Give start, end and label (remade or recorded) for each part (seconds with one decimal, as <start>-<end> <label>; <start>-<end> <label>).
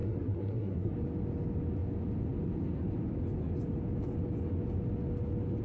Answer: 0.0-0.9 remade; 0.9-5.6 recorded